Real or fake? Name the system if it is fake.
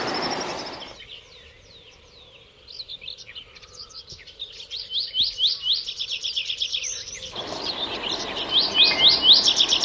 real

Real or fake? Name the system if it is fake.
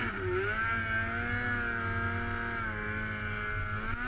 real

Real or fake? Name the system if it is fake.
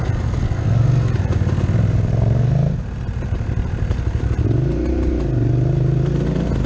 real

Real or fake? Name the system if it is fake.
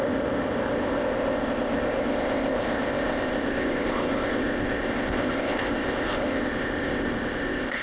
fake, codec, ZipCodec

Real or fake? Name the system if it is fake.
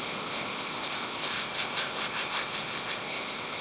fake, codec, ZipCodec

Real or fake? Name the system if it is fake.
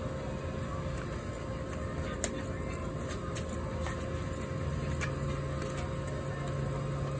real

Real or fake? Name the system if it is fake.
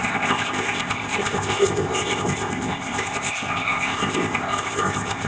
fake, codec, ZipCodec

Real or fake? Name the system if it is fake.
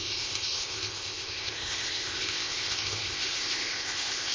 fake, codec, ZipCodec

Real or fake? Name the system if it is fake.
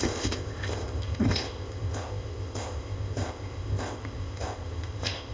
fake, codec, ZipCodec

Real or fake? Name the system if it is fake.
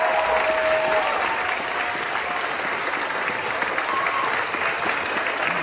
real